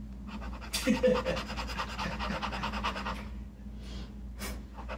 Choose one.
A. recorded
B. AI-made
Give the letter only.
A